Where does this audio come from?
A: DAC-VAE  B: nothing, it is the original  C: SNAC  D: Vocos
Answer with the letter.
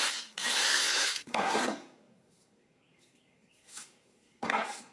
C